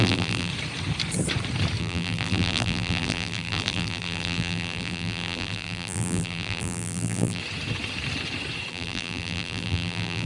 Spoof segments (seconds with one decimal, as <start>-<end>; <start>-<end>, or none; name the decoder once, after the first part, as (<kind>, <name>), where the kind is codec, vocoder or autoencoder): 0.0-0.5 (vocoder, BigVGAN v2); 1.8-7.4; 8.7-10.3